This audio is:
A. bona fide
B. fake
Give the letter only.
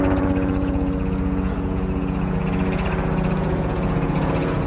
B